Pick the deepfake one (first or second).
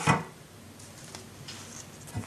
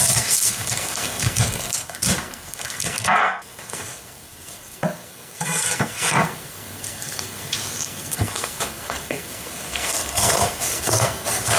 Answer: second